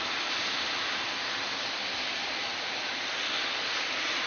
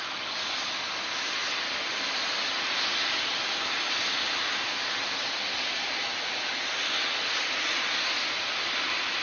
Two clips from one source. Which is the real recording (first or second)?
second